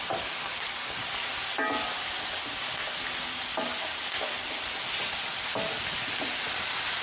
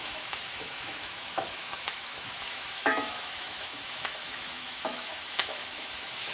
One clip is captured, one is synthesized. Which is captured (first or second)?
first